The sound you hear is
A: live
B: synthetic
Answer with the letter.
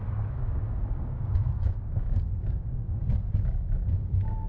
B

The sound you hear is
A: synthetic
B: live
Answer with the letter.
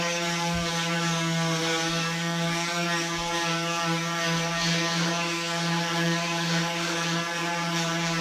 A